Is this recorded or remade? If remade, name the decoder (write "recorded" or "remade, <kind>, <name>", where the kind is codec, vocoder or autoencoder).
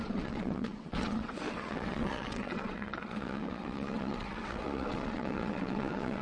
remade, vocoder, WaveNeXt